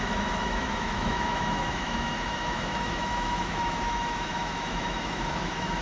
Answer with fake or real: fake